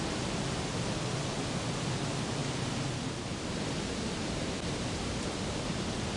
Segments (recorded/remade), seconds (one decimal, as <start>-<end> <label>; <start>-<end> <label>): 0.0-2.4 recorded; 2.4-6.2 remade